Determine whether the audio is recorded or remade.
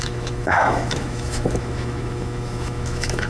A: remade